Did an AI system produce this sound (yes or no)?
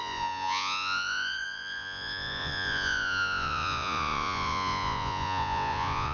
yes